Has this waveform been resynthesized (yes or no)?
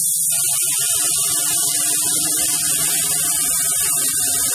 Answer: no